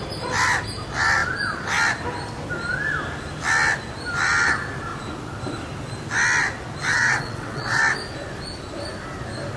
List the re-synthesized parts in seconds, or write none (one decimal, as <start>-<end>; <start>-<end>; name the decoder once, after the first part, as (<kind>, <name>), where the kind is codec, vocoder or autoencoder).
6.9-7.8 (vocoder, WaveNeXt)